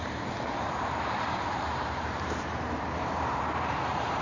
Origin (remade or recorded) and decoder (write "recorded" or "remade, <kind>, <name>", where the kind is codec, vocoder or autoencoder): remade, vocoder, BigVGAN v2